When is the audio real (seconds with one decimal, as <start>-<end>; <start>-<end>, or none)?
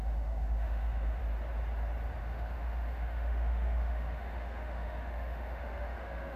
1.2-2.2